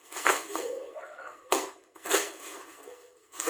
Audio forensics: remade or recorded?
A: remade